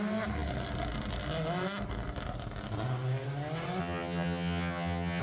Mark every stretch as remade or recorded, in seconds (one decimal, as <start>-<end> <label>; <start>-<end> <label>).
0.0-3.8 recorded; 3.8-5.2 remade